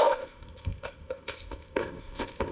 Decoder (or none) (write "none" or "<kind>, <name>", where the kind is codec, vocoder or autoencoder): codec, ZipCodec